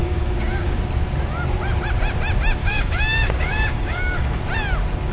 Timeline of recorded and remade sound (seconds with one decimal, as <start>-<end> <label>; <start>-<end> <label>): 0.0-0.8 remade; 0.8-2.6 recorded; 2.6-4.4 remade; 4.4-5.1 recorded